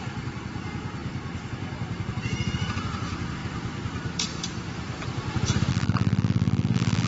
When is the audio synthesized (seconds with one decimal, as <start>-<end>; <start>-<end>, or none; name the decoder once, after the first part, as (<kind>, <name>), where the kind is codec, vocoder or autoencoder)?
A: 5.7-7.1 (vocoder, BigVGAN v2)